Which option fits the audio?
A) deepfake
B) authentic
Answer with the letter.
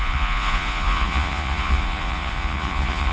A